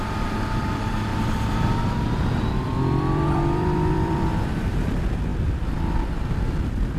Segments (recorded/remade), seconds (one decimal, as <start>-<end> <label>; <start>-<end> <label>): 0.0-1.1 recorded; 1.1-4.5 remade; 4.5-7.0 recorded